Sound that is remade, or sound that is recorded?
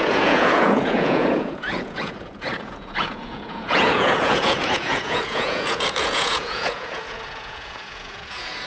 remade